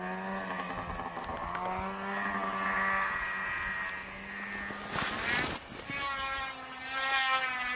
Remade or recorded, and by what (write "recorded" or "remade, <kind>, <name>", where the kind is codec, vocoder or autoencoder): recorded